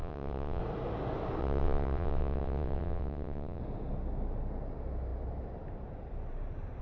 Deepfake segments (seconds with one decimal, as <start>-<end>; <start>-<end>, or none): 0.0-0.6; 1.4-3.6